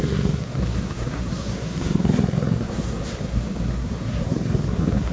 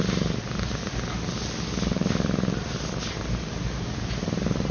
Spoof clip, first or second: first